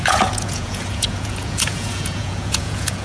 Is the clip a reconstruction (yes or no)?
yes